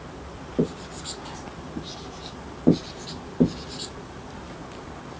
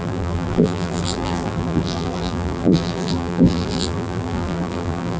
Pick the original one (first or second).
first